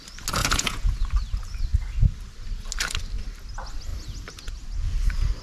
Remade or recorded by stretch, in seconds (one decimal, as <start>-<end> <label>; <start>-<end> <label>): 0.0-0.4 recorded; 0.4-1.0 remade; 1.0-5.4 recorded